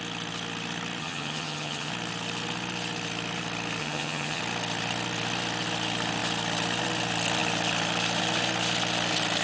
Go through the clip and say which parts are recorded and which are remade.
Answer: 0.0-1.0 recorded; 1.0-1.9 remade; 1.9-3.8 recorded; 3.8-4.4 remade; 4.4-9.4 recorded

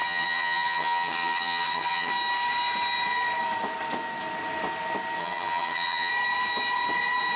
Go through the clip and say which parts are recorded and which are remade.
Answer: 0.0-2.1 remade; 2.1-5.2 recorded; 5.2-6.1 remade; 6.1-7.4 recorded

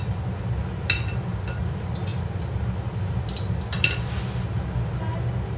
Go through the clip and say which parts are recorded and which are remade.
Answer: 0.0-5.6 recorded

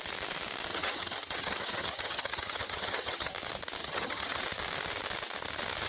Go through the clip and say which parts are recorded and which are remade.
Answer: 0.0-0.7 recorded; 0.7-3.3 remade; 3.3-3.8 recorded; 3.8-4.4 remade; 4.4-5.9 recorded

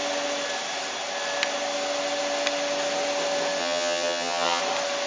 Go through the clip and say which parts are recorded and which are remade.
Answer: 0.0-3.6 recorded; 3.6-4.6 remade; 4.6-5.1 recorded

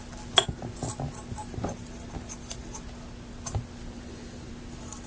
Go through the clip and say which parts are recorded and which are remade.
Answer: 0.0-5.1 recorded